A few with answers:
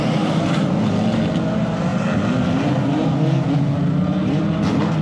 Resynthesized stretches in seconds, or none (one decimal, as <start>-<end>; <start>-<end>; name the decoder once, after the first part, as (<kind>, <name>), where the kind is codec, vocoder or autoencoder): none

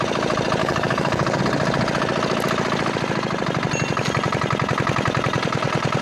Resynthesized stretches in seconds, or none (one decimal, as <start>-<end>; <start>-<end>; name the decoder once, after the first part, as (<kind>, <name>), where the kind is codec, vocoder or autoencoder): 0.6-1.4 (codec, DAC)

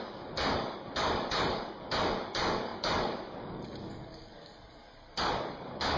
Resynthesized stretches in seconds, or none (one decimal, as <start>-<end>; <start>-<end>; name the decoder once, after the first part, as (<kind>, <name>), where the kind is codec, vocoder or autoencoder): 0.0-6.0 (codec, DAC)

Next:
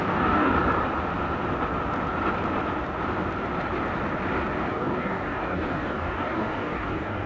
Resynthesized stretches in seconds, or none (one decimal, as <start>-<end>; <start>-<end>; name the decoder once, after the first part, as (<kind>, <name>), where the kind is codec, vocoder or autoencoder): 0.0-0.5 (codec, DAC); 4.7-7.3

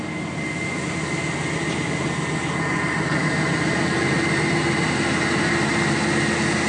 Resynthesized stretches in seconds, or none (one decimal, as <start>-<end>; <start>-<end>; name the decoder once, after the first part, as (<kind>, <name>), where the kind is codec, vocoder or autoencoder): none

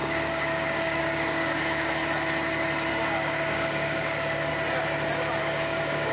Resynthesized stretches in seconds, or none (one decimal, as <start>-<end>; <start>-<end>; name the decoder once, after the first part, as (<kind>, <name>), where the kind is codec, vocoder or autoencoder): 0.0-2.0 (codec, DAC); 2.9-4.5; 5.4-6.1

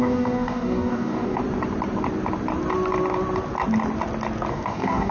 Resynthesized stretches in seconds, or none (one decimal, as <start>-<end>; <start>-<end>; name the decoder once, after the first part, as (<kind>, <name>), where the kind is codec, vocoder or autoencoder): 0.0-1.4 (codec, DAC); 4.5-5.1